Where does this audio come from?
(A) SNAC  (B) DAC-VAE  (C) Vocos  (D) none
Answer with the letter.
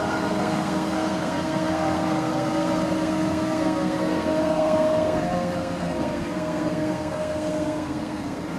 A